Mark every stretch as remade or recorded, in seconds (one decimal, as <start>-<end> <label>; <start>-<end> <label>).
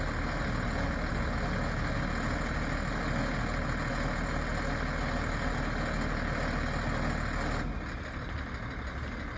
0.0-9.4 recorded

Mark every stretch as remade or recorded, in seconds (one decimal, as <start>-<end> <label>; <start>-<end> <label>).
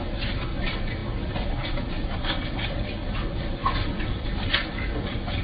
0.0-5.4 recorded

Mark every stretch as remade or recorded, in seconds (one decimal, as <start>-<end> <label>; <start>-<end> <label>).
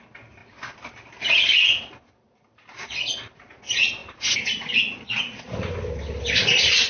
0.0-6.9 recorded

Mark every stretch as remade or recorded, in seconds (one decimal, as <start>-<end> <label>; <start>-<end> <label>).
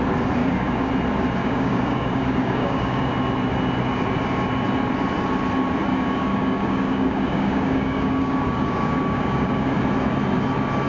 0.0-0.4 recorded; 0.4-0.9 remade; 0.9-1.4 recorded; 1.4-3.1 remade; 3.1-5.9 recorded; 5.9-9.8 remade; 9.8-10.9 recorded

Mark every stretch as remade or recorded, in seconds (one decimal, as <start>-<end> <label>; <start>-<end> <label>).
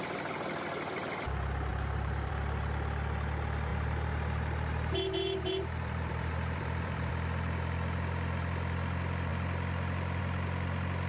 0.0-1.7 recorded; 1.7-2.3 remade; 2.3-3.7 recorded; 3.7-7.1 remade; 7.1-11.1 recorded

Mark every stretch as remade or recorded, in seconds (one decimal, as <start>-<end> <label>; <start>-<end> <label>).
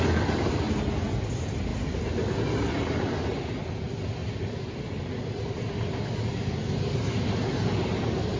0.0-8.4 recorded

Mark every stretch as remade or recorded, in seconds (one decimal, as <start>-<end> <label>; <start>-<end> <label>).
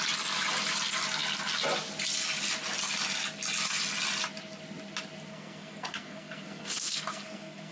0.0-5.3 recorded; 5.3-7.7 remade